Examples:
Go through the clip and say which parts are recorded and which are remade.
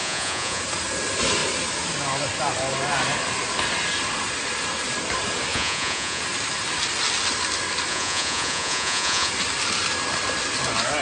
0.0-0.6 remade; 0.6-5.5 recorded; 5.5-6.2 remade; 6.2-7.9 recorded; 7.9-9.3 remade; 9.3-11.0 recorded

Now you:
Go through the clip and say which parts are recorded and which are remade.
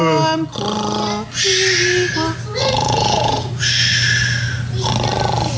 0.0-2.6 recorded; 2.6-3.5 remade; 3.5-5.6 recorded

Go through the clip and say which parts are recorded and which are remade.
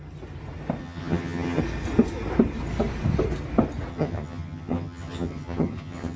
0.0-0.8 recorded; 0.8-1.6 remade; 1.6-3.9 recorded; 3.9-6.2 remade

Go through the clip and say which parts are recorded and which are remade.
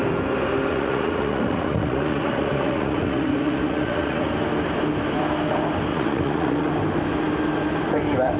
0.0-0.7 recorded; 0.7-4.3 remade; 4.3-5.9 recorded; 5.9-6.7 remade; 6.7-8.4 recorded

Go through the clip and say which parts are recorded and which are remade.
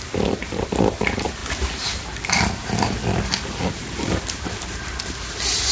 0.0-5.7 recorded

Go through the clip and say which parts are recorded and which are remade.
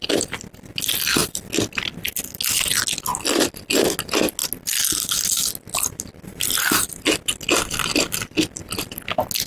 0.0-9.5 recorded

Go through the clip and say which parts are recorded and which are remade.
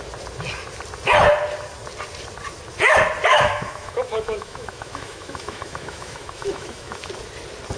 0.0-3.3 recorded; 3.3-7.1 remade; 7.1-7.8 recorded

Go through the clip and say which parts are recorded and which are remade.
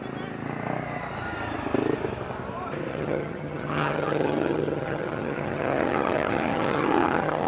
0.0-2.9 recorded; 2.9-7.5 remade